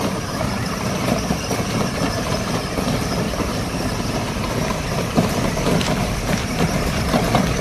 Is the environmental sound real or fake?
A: fake